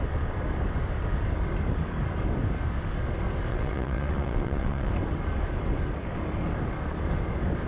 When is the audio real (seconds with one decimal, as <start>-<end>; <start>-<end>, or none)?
0.0-3.5; 4.9-7.7